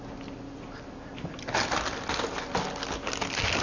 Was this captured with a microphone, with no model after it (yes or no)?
yes